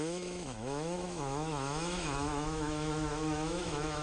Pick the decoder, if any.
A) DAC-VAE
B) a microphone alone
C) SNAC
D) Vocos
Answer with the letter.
A